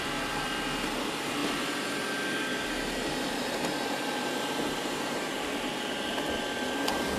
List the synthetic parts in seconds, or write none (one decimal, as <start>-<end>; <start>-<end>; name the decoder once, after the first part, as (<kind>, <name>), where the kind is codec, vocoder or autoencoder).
none